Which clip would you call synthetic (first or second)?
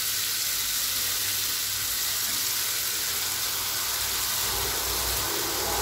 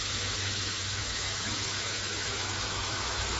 second